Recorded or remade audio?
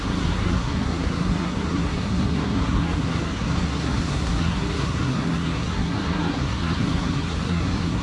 remade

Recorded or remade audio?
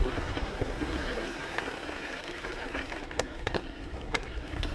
remade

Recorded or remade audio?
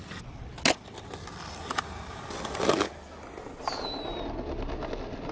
recorded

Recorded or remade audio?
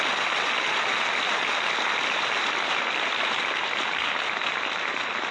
recorded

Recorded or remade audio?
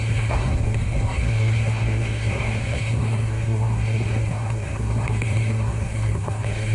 remade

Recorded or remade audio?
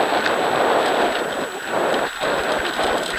recorded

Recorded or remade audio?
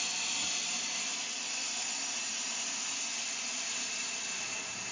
recorded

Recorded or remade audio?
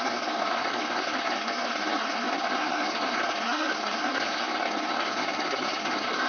remade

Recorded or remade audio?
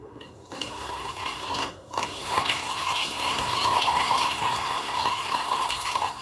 remade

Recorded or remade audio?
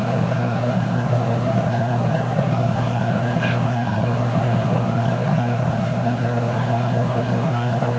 remade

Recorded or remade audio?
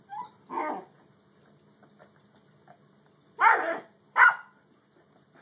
recorded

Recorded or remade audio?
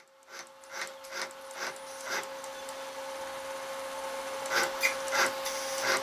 recorded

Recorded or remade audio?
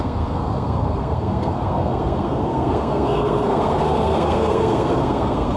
remade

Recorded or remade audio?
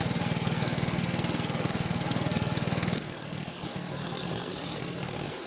remade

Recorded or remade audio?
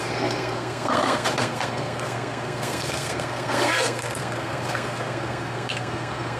remade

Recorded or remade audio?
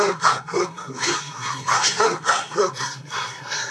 remade